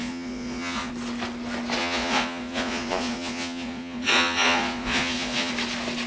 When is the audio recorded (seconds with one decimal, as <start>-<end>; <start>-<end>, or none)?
0.9-1.8; 5.5-6.1